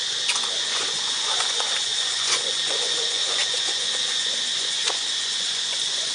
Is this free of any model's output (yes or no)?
no